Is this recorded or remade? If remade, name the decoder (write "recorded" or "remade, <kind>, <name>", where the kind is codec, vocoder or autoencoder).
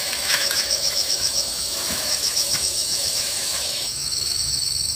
remade, autoencoder, DAC-VAE